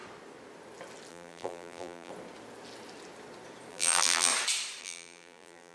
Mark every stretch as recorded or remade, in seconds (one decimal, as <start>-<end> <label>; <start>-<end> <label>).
0.0-1.1 recorded; 1.1-2.1 remade; 2.1-3.7 recorded; 3.7-4.3 remade; 4.3-4.8 recorded; 4.8-5.7 remade